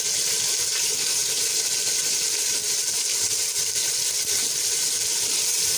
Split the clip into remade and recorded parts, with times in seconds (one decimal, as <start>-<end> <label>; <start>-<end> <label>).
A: 0.0-5.8 recorded